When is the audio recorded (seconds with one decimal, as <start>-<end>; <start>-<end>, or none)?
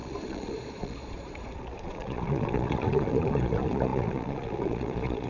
none